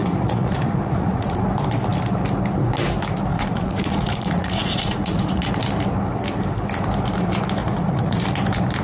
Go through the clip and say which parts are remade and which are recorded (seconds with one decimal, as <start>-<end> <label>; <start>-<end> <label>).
0.0-1.5 remade; 1.5-3.3 recorded; 3.3-5.5 remade; 5.5-7.6 recorded; 7.6-8.2 remade; 8.2-8.8 recorded